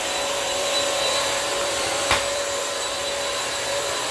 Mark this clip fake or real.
fake